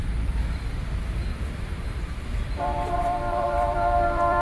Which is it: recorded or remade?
remade